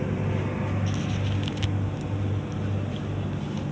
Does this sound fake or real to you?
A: real